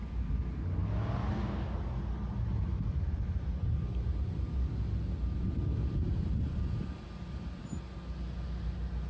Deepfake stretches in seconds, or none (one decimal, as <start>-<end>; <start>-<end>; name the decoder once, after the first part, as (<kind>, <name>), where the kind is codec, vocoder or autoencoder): none

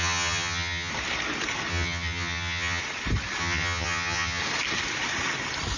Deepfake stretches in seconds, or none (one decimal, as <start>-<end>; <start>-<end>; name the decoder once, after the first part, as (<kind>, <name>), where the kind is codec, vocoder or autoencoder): 0.0-0.9 (vocoder, HiFi-GAN); 1.7-2.8; 3.4-4.4

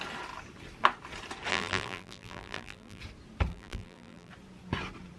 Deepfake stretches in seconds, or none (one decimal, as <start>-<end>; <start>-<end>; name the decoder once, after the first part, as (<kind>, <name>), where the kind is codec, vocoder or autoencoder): 1.5-3.0 (vocoder, BigVGAN v2); 3.5-4.3

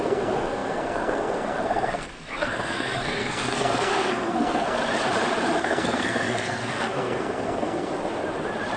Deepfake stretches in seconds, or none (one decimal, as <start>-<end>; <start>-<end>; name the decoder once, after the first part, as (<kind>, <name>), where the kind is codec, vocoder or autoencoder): 0.0-4.8 (codec, SNAC); 5.6-7.9

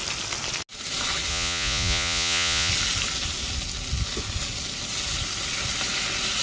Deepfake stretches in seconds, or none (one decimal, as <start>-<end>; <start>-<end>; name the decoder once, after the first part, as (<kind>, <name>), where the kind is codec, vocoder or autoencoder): 1.3-2.7 (vocoder, Vocos)

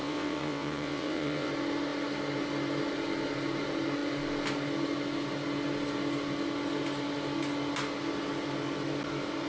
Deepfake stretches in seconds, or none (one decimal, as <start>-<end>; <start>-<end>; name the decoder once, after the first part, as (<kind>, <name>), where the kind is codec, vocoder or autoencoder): 0.0-1.5 (vocoder, WaveNeXt)